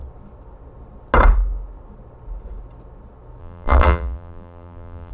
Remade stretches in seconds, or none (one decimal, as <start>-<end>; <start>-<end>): 3.4-5.1